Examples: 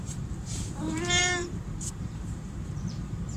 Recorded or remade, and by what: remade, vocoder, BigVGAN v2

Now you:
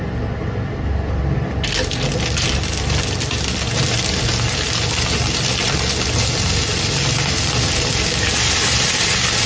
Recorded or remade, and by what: recorded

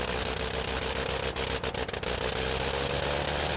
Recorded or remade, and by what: recorded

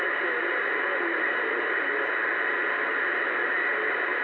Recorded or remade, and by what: recorded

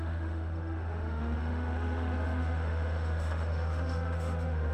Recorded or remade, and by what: remade, autoencoder, DAC-VAE